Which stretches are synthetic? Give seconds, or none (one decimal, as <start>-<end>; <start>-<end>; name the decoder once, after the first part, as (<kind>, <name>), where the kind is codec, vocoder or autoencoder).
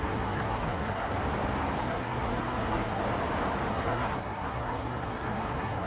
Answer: 0.0-1.1 (codec, SNAC); 1.8-3.0; 3.7-5.9